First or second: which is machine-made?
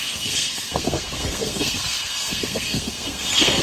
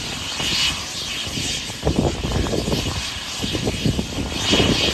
first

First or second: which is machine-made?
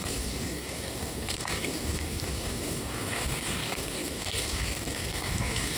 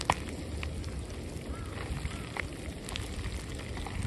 first